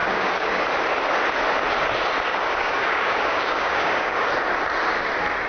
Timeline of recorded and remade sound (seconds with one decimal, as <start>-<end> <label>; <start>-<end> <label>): 0.0-0.6 remade; 0.6-2.3 recorded; 2.3-4.3 remade; 4.3-5.5 recorded